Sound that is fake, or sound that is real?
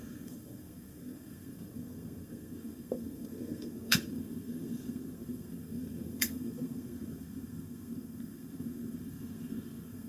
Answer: fake